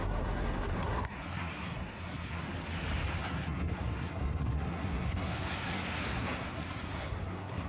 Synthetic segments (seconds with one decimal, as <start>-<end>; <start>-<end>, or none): 0.0-2.4; 3.2-7.7